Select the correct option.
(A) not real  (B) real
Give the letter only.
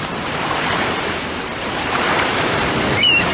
A